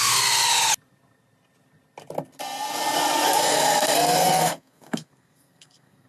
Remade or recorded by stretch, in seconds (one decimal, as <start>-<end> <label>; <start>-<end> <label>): 0.0-0.4 remade; 0.4-3.4 recorded; 3.4-6.1 remade